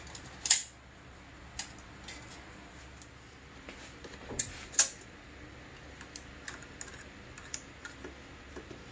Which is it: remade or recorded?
recorded